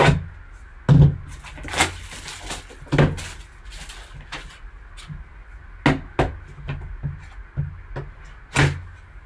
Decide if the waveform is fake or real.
real